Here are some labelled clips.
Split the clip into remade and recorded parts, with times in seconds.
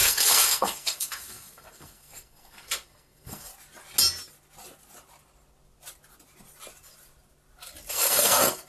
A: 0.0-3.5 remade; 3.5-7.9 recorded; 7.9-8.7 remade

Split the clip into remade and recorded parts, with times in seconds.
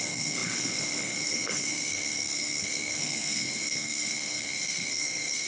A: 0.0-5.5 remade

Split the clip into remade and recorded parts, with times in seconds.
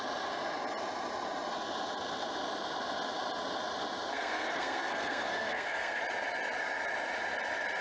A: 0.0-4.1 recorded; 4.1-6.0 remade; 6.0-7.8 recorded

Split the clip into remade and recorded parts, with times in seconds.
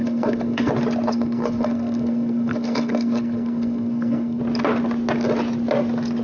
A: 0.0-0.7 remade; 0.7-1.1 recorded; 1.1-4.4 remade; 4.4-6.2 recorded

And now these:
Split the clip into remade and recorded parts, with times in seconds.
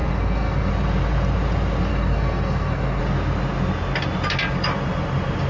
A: 0.0-0.7 remade; 0.7-1.9 recorded; 1.9-3.0 remade; 3.0-5.5 recorded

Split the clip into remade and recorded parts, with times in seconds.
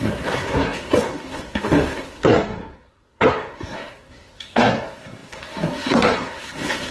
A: 0.0-6.9 remade